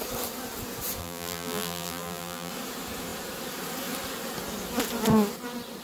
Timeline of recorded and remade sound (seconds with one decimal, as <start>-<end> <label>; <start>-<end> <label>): 0.0-1.0 recorded; 1.0-2.5 remade; 2.5-5.8 recorded